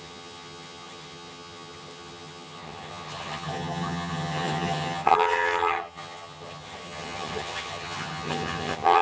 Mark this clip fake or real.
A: fake